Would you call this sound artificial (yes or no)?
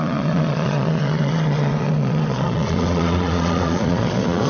yes